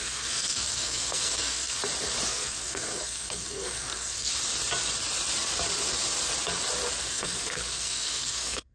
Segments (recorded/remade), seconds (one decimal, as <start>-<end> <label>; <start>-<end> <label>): 0.0-1.8 remade; 1.8-2.3 recorded; 2.3-4.3 remade; 4.3-7.0 recorded; 7.0-8.7 remade